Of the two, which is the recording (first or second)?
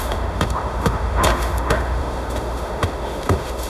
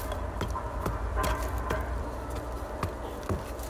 second